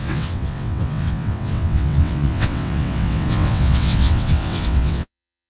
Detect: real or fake fake